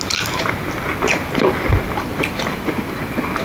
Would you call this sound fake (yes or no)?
no